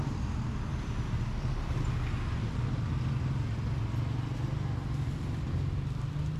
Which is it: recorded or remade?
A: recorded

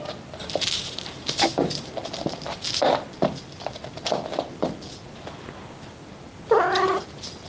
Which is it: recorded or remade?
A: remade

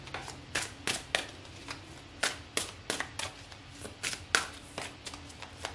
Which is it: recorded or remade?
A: recorded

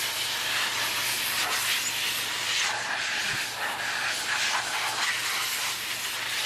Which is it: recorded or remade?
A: recorded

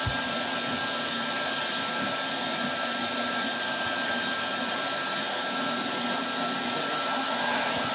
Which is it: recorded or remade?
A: recorded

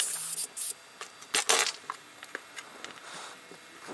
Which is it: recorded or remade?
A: recorded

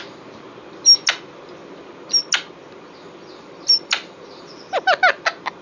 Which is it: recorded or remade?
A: recorded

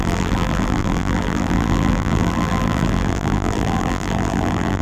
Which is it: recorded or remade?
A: remade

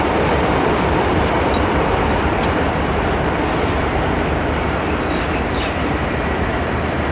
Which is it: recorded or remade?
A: remade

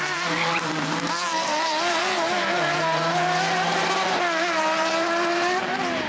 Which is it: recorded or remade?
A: remade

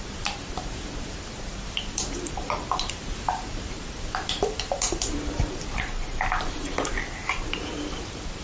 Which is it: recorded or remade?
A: remade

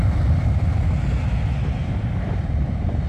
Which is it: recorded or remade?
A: recorded